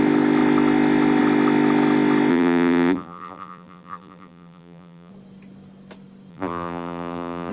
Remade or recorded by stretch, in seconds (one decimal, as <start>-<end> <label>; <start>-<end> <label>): 0.0-2.3 recorded; 2.3-5.1 remade; 5.1-6.3 recorded; 6.3-7.5 remade